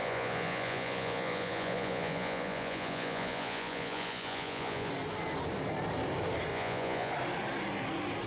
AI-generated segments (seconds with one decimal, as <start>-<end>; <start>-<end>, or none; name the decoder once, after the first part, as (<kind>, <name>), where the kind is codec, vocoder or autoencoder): 0.0-4.9 (vocoder, Vocos); 6.5-7.1